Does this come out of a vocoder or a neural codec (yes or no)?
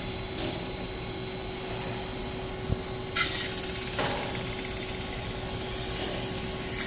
no